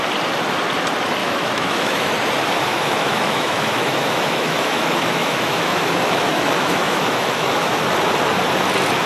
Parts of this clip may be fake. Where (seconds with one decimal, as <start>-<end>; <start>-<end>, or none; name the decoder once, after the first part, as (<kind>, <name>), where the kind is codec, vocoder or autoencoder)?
1.2-2.1 (autoencoder, DAC-VAE); 2.7-7.8